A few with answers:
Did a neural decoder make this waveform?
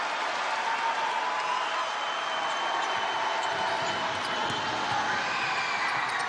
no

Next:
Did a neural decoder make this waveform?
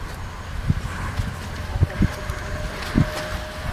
no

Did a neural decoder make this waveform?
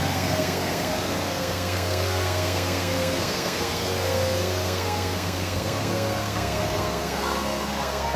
yes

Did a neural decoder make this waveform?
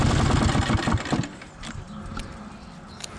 no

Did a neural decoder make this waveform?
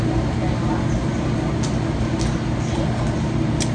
no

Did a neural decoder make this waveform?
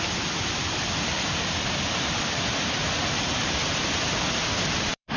yes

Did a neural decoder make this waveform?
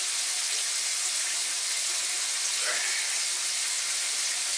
no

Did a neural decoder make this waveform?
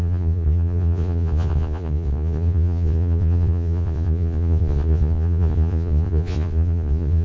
yes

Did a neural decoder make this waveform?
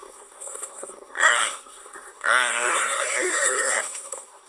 yes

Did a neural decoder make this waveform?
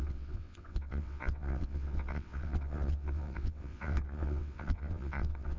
yes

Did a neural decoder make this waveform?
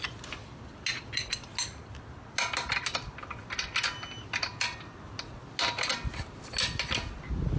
no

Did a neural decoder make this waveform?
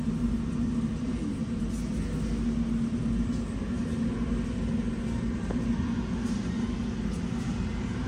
no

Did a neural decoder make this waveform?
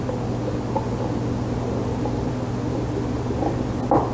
no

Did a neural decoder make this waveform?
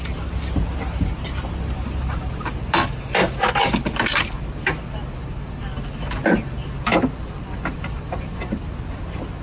no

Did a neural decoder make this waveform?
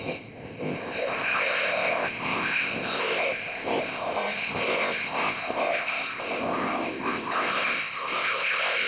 yes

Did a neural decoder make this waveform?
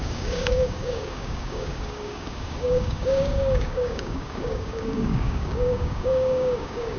yes